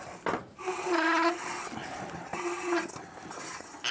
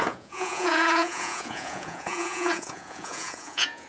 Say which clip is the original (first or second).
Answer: first